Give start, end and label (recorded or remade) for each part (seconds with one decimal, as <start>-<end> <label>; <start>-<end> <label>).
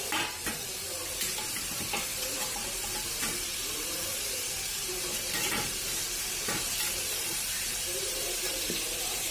0.0-9.3 remade